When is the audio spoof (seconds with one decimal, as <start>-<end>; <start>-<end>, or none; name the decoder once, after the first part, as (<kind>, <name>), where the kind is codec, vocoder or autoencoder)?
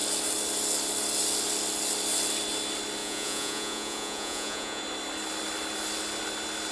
3.0-4.8 (vocoder, Vocos)